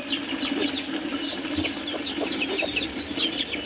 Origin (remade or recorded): recorded